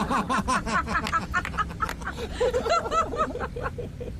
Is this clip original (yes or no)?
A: yes